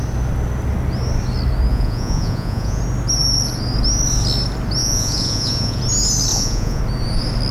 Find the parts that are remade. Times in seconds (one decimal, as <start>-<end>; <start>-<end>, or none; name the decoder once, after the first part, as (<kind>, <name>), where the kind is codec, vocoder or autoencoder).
1.7-2.8 (vocoder, Vocos); 4.8-5.8; 6.3-6.8